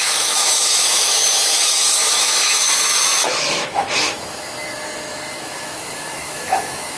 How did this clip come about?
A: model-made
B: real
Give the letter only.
A